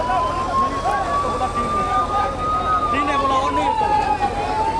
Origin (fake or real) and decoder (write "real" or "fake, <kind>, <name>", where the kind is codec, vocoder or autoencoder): real